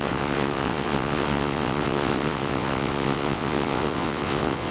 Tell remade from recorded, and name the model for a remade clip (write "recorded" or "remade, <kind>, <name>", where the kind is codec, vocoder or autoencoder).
remade, vocoder, WaveNeXt